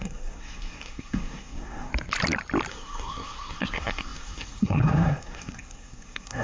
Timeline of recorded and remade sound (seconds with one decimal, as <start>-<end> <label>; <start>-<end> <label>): 0.0-1.9 remade; 1.9-2.7 recorded; 2.7-6.4 remade